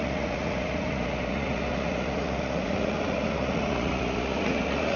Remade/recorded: remade